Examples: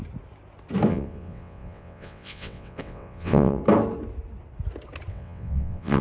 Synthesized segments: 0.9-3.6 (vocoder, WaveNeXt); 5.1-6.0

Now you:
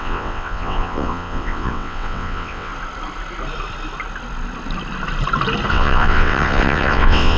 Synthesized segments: 0.0-2.7 (vocoder, WaveNeXt); 5.7-7.4

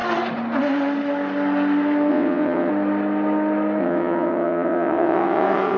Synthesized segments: 2.1-2.7 (vocoder, WaveNeXt); 3.8-5.8

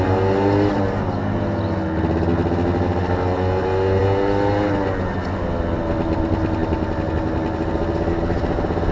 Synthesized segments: none